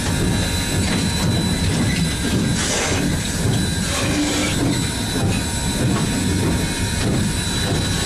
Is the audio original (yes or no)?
yes